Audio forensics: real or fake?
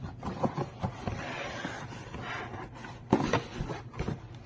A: real